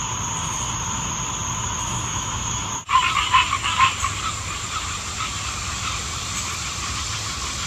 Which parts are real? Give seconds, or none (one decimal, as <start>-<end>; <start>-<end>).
0.0-1.9; 2.7-7.7